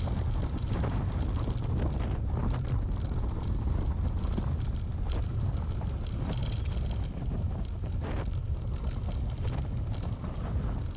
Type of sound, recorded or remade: recorded